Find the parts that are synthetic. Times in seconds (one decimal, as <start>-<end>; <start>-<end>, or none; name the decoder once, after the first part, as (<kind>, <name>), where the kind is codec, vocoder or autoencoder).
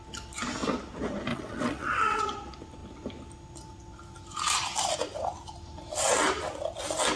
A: 1.3-2.2 (vocoder, WaveNeXt)